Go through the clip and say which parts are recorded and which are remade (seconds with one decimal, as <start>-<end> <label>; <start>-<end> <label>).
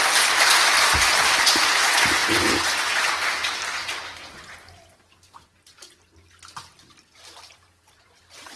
0.0-8.6 recorded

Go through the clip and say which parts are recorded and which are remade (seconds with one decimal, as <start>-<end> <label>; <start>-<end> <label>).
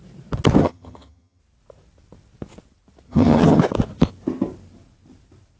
0.0-0.6 recorded; 0.6-1.4 remade; 1.4-3.1 recorded; 3.1-3.6 remade; 3.6-5.6 recorded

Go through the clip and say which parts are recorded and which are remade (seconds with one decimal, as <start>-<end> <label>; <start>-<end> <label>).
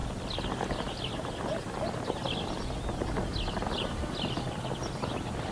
0.0-5.5 recorded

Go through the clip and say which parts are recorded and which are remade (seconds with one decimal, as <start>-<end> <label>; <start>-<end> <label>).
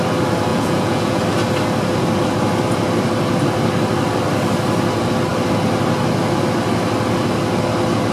0.0-0.5 recorded; 0.5-1.2 remade; 1.2-8.1 recorded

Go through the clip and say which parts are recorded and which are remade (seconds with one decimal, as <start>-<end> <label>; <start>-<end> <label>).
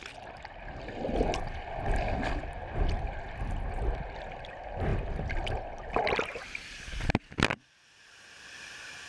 0.0-9.1 recorded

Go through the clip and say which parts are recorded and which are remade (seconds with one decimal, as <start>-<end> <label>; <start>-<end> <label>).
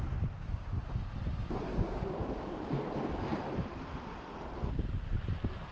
0.0-0.4 recorded; 0.4-0.9 remade; 0.9-1.7 recorded; 1.7-2.7 remade; 2.7-5.7 recorded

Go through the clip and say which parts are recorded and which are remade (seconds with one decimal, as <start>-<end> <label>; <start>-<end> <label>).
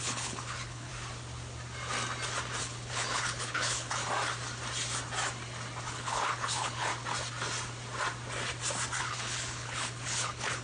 0.0-0.9 remade; 0.9-2.6 recorded; 2.6-4.0 remade; 4.0-5.9 recorded; 5.9-6.9 remade; 6.9-9.0 recorded; 9.0-10.6 remade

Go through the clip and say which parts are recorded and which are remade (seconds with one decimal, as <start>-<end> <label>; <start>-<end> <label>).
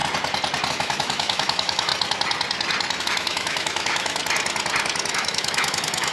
0.0-0.7 recorded; 0.7-1.9 remade; 1.9-3.0 recorded; 3.0-4.2 remade; 4.2-5.1 recorded; 5.1-6.1 remade